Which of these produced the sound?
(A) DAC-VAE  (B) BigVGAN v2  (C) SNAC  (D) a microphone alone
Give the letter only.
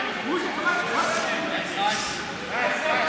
D